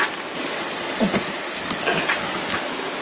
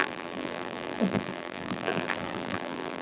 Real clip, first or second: first